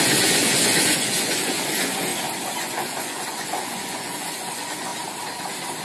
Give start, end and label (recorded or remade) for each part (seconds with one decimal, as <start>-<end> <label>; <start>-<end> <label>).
0.0-2.1 remade; 2.1-2.6 recorded; 2.6-4.9 remade; 4.9-5.8 recorded